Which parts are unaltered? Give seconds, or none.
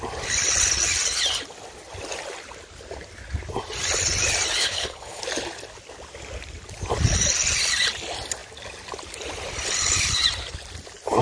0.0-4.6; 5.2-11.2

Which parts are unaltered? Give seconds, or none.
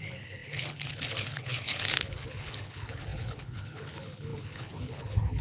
none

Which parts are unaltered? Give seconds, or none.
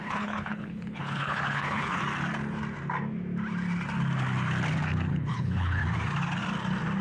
2.0-5.1; 5.8-7.0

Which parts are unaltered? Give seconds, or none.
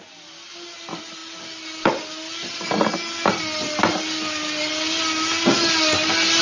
0.0-6.4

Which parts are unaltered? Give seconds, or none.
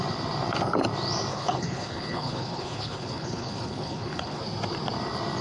0.0-1.3; 4.4-5.4